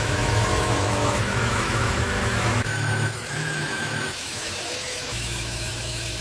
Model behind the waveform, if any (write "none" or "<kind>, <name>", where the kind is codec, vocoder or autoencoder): autoencoder, DAC-VAE